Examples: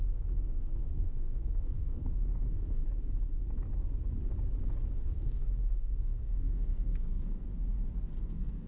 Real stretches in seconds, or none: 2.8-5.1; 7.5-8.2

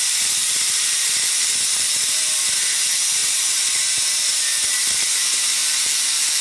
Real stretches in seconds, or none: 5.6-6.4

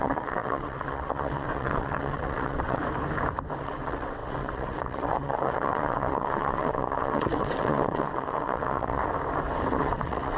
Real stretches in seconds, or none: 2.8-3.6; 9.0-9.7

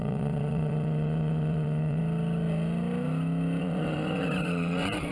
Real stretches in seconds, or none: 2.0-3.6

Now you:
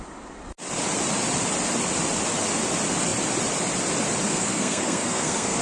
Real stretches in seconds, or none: 0.0-4.3

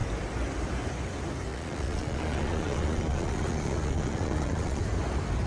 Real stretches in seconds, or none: 0.0-1.5; 4.8-5.5

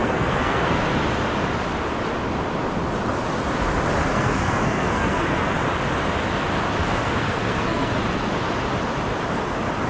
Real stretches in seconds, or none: 0.8-4.1; 5.5-6.8; 7.9-9.9

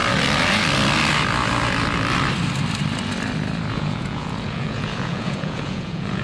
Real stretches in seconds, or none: 0.0-3.7